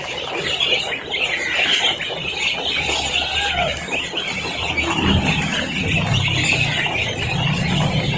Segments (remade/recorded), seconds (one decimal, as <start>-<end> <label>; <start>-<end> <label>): 0.0-3.6 recorded; 3.6-4.7 remade; 4.7-8.2 recorded